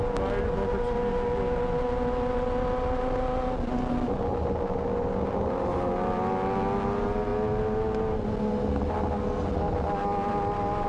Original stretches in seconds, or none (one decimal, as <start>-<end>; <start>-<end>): 0.0-10.9